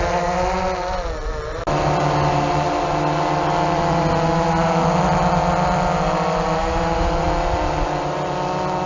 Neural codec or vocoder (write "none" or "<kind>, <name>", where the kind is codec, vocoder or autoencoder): none